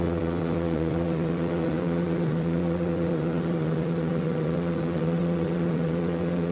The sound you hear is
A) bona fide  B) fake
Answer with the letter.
B